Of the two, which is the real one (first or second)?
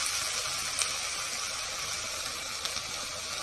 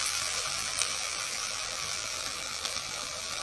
first